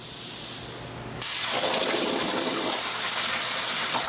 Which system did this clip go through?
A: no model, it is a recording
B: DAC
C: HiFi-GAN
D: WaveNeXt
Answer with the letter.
A